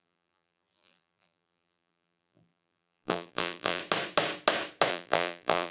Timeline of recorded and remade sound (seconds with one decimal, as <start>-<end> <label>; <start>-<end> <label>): 0.0-3.8 remade; 3.8-4.9 recorded; 4.9-5.7 remade